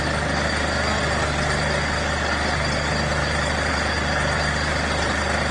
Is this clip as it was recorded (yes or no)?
yes